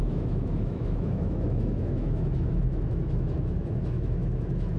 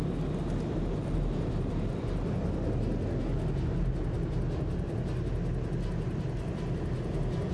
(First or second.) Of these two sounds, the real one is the second